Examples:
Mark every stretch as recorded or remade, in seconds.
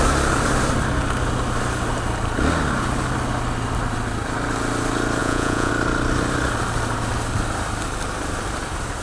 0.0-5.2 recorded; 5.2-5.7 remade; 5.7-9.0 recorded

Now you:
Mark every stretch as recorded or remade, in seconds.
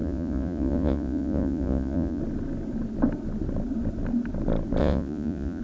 0.0-2.2 remade; 2.2-4.8 recorded; 4.8-5.6 remade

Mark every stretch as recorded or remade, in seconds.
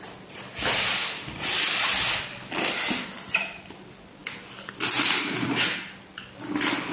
0.0-6.9 recorded